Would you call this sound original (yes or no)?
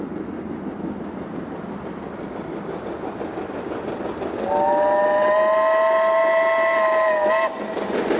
yes